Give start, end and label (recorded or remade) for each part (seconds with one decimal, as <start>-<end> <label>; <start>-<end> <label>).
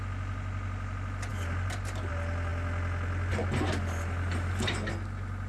0.0-5.5 recorded